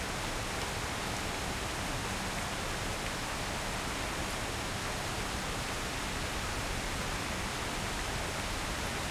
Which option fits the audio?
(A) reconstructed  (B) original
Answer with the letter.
B